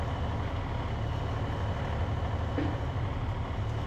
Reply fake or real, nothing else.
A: real